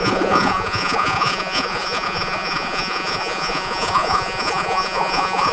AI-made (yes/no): yes